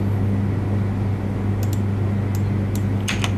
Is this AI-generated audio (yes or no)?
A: no